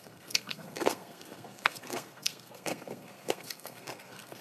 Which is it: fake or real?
fake